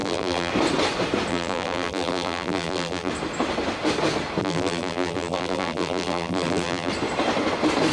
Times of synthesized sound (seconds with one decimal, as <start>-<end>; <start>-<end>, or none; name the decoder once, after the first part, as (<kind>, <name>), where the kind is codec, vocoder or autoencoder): 0.0-0.5 (vocoder, BigVGAN v2); 1.3-3.1; 4.4-6.9